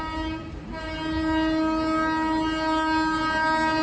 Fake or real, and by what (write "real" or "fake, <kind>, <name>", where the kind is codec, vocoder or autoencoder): real